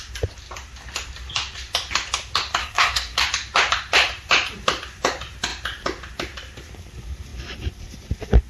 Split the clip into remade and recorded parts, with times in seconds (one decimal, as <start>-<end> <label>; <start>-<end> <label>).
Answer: 0.0-2.6 recorded; 2.6-3.2 remade; 3.2-8.5 recorded